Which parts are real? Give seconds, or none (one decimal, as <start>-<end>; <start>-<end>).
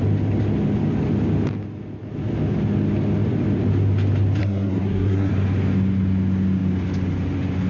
0.0-4.4; 5.3-7.7